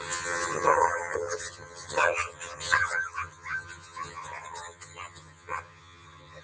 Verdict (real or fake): fake